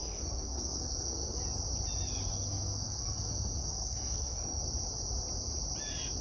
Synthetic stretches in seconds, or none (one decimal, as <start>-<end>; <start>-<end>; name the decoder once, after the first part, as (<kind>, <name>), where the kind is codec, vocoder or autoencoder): 0.0-1.4 (codec, SNAC); 2.3-4.6